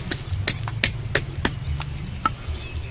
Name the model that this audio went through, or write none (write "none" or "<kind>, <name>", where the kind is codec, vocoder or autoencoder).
none